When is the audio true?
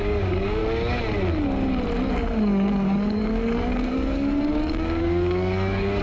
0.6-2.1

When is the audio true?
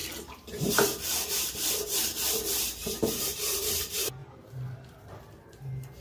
none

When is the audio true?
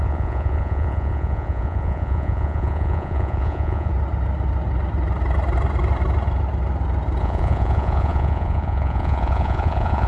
3.9-7.2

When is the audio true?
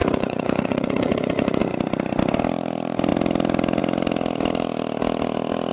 1.6-5.7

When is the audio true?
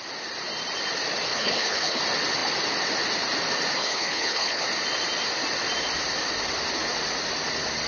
0.0-1.3; 2.0-3.8; 4.6-7.9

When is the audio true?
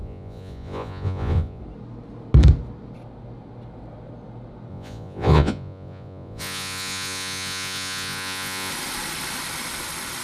1.6-4.7; 8.7-10.2